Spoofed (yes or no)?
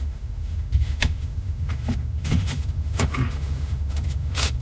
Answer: yes